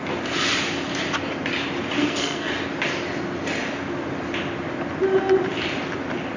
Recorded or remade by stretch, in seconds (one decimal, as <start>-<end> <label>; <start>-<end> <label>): 0.0-2.0 recorded; 2.0-2.5 remade; 2.5-6.4 recorded